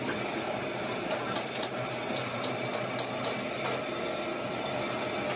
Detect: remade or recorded recorded